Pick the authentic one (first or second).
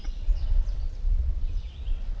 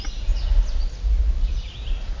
second